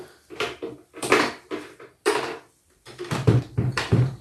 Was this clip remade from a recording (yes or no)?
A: yes